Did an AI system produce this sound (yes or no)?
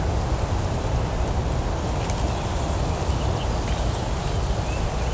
no